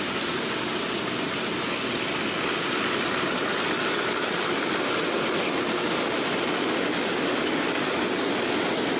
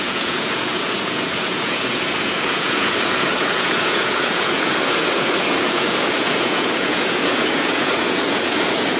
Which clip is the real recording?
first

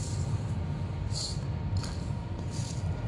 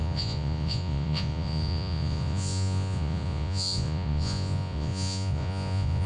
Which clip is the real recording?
first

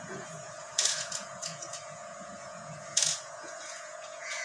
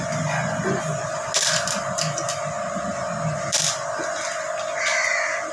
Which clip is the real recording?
second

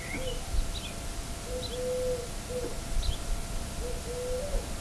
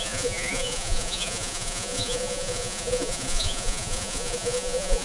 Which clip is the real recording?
first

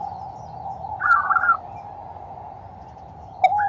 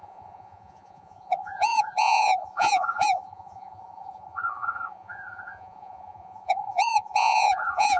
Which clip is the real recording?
first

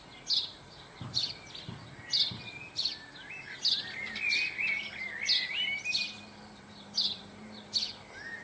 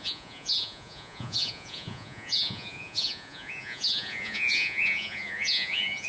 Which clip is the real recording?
first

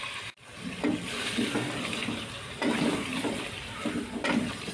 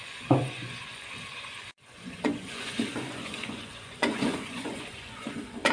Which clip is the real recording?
first